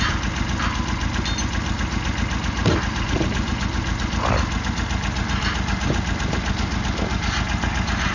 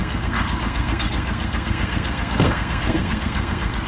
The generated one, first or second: second